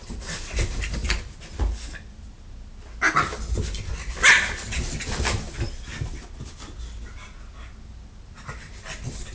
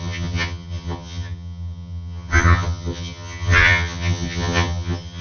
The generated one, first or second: second